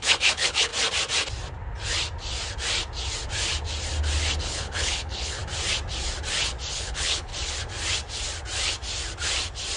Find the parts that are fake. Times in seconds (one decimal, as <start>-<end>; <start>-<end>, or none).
0.0-0.7; 4.4-5.4; 6.7-7.3